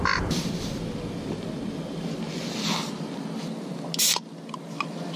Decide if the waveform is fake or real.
real